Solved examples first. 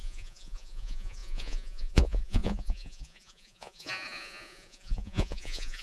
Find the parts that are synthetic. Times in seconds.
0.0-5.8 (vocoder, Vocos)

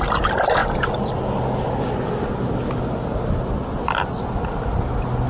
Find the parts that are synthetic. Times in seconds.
none

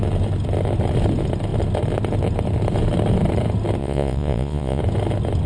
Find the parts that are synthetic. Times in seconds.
3.8-4.8 (vocoder, Vocos)

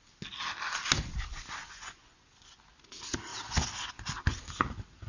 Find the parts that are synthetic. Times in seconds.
1.6-2.6 (vocoder, Vocos)

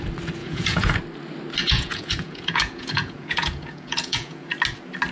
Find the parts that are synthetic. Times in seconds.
0.4-1.0 (vocoder, Vocos); 1.6-4.5

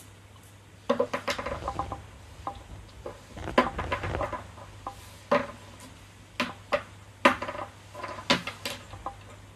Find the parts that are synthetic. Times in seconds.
none

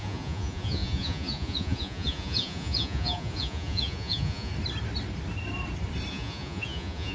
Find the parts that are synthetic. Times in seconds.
0.0-4.5 (vocoder, Vocos); 6.1-7.1